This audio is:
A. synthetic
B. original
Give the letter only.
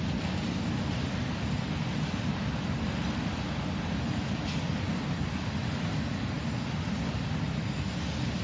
B